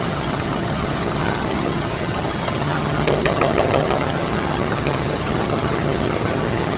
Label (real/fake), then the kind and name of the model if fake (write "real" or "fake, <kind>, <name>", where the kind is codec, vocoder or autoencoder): fake, vocoder, HiFi-GAN